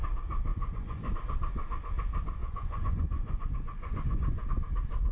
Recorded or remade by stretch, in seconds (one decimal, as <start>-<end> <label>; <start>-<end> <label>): 0.0-0.5 recorded; 0.5-1.1 remade; 1.1-2.4 recorded; 2.4-4.4 remade; 4.4-5.1 recorded